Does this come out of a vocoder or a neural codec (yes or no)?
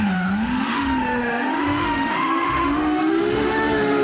yes